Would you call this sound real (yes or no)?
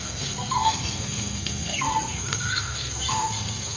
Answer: no